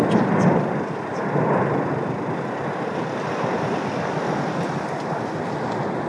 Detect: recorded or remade remade